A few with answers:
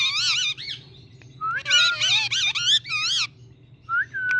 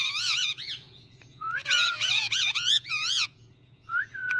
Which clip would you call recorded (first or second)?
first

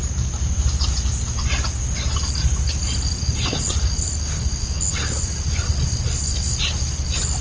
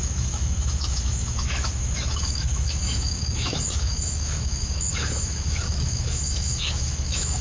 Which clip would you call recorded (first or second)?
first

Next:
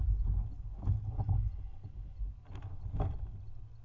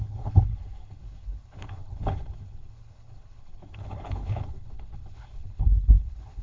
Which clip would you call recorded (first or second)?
first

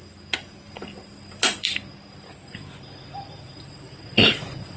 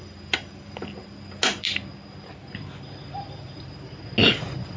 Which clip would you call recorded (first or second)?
second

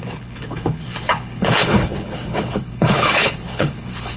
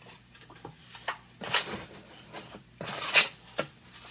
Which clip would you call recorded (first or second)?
second